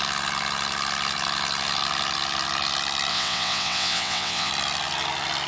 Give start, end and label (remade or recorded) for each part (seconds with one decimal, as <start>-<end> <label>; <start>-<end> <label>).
0.0-3.1 recorded; 3.1-4.5 remade; 4.5-5.5 recorded